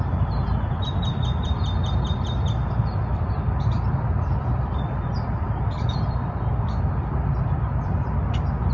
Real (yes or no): no